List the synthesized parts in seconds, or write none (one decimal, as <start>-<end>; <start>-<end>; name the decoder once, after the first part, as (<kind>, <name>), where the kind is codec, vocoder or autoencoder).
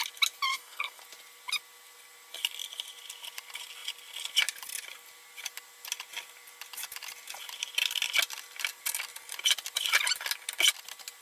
0.5-1.0 (codec, SNAC)